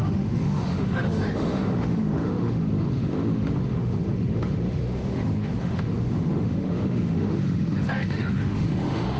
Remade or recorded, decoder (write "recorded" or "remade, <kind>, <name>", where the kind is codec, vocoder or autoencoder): remade, autoencoder, DAC-VAE